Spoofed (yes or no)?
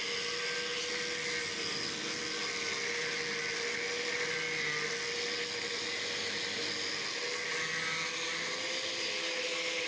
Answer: no